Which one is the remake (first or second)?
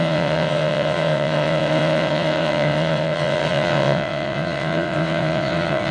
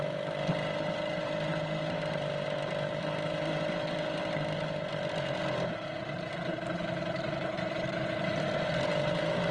first